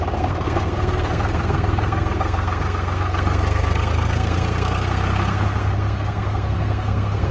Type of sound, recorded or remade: remade